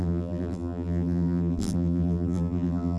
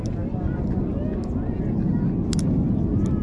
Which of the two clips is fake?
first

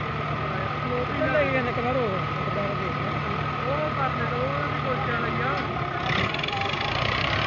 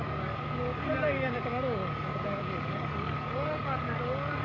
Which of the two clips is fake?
second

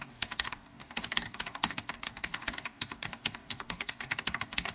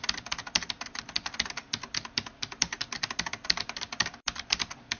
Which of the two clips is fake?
first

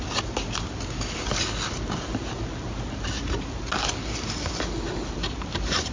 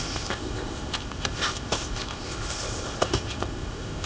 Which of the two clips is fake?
second